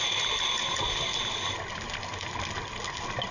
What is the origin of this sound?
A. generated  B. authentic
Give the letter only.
B